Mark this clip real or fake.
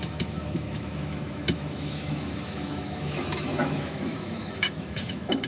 fake